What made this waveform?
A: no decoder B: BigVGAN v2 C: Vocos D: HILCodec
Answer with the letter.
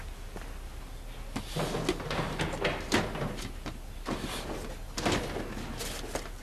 A